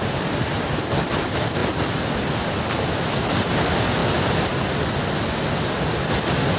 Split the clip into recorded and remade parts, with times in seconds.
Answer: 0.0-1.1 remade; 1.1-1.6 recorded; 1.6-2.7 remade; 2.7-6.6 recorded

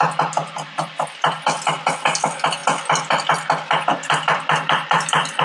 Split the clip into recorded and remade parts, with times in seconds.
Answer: 0.0-3.9 recorded; 3.9-5.4 remade

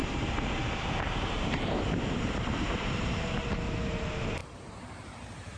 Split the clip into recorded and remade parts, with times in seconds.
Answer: 0.0-3.4 remade; 3.4-4.4 recorded; 4.4-5.6 remade

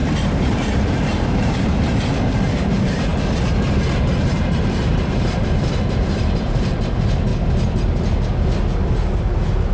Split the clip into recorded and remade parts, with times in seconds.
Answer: 0.0-3.1 remade; 3.1-4.4 recorded; 4.4-7.3 remade; 7.3-9.7 recorded

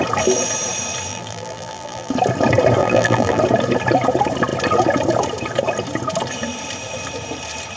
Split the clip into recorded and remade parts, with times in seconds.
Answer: 0.0-1.1 recorded; 1.1-2.1 remade; 2.1-2.8 recorded; 2.8-3.4 remade; 3.4-7.8 recorded

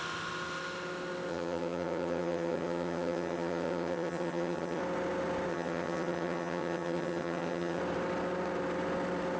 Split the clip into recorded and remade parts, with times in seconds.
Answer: 0.0-1.3 recorded; 1.3-4.8 remade; 4.8-5.5 recorded; 5.5-7.8 remade; 7.8-9.4 recorded

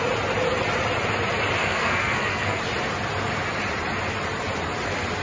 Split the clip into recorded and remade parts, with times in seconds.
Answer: 0.0-1.6 recorded; 1.6-2.6 remade; 2.6-5.2 recorded

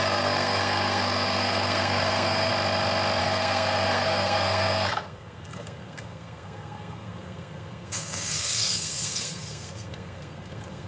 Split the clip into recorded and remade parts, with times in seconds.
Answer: 0.0-2.5 remade; 2.5-3.2 recorded; 3.2-10.9 remade